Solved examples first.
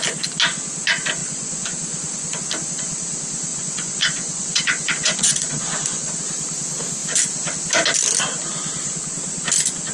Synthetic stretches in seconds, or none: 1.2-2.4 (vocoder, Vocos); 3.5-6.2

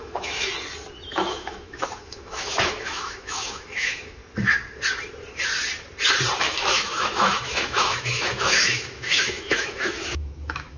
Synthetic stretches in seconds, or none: 0.0-0.5 (autoencoder, DAC-VAE); 1.1-4.2; 6.4-10.8

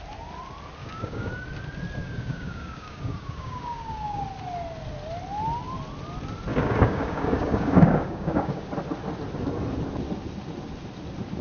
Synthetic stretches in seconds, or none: 0.8-1.3 (codec, DAC); 2.0-4.2; 6.5-8.7

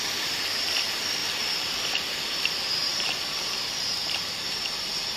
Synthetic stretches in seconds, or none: 1.2-3.2 (vocoder, BigVGAN v2); 4.0-5.2

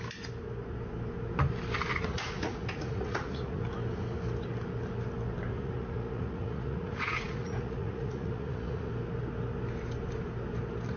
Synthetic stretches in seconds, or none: 1.9-3.6 (vocoder, Vocos); 5.5-8.9

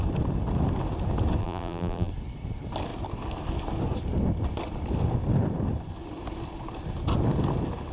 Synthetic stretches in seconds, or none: 1.4-2.1 (vocoder, BigVGAN v2)

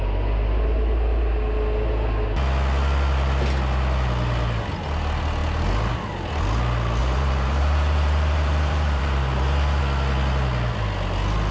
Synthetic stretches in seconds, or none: 7.0-9.8 (vocoder, BigVGAN v2)

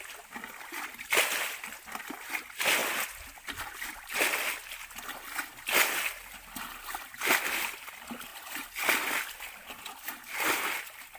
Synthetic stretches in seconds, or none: none